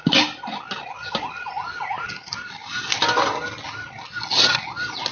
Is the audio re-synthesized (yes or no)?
no